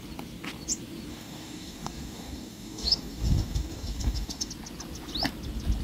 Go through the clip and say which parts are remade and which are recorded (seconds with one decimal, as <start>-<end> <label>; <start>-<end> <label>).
0.0-1.1 recorded; 1.1-4.5 remade; 4.5-5.8 recorded